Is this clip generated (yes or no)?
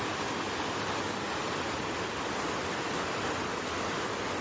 no